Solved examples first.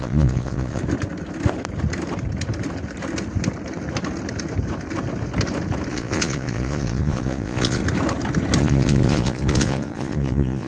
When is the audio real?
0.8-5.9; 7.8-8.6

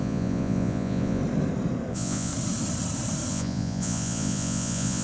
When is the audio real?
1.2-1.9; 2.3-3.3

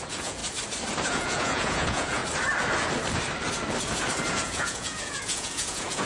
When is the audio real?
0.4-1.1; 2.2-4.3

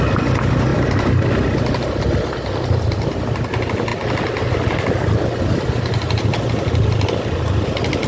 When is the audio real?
0.0-8.1

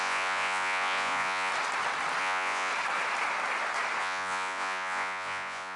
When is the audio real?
1.5-2.2; 2.7-4.0

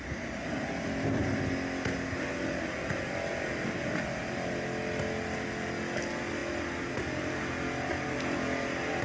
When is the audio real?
0.0-9.0

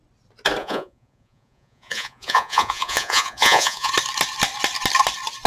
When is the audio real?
0.0-0.6; 3.9-5.5

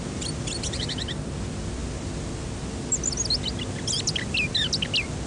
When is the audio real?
0.0-5.3